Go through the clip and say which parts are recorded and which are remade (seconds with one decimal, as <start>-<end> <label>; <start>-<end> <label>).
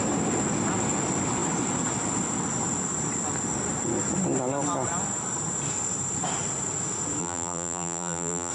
0.0-7.2 recorded; 7.2-8.5 remade